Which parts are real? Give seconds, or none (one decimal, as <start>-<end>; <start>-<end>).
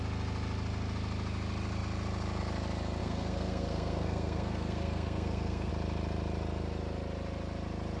0.0-3.0; 5.7-8.0